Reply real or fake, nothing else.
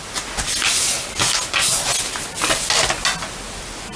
real